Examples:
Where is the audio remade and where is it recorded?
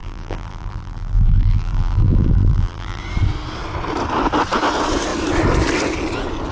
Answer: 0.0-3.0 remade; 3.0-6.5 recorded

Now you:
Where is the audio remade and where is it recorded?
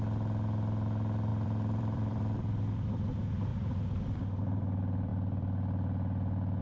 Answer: 0.0-1.3 recorded; 1.3-2.9 remade; 2.9-3.5 recorded; 3.5-4.2 remade; 4.2-6.6 recorded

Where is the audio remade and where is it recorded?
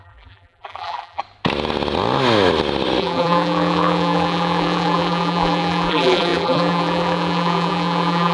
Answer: 0.0-1.2 remade; 1.2-3.0 recorded; 3.0-8.3 remade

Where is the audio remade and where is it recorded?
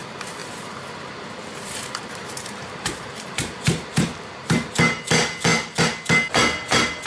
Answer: 0.0-0.4 recorded; 0.4-4.7 remade; 4.7-7.1 recorded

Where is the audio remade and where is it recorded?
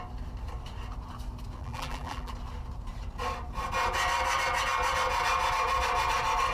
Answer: 0.0-1.6 recorded; 1.6-2.3 remade; 2.3-6.5 recorded